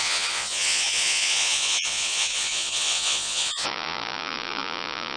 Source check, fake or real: fake